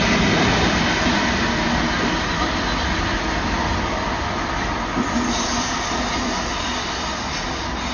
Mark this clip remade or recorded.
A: recorded